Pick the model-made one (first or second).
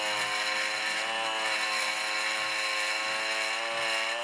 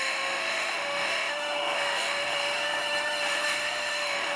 second